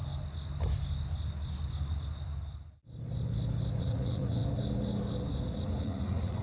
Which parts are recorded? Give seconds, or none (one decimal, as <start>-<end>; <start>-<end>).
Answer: 0.0-3.8; 4.4-5.8